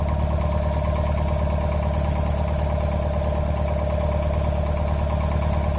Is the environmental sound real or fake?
real